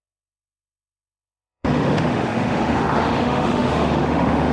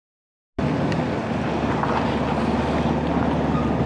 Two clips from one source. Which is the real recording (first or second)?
second